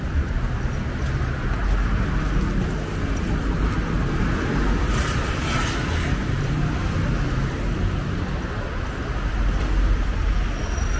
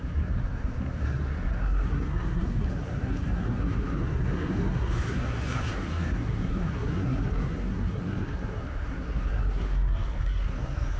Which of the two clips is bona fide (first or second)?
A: first